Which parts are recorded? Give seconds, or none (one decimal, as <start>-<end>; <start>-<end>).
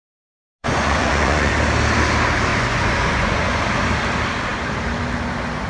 0.0-0.6; 1.5-2.5; 3.6-5.7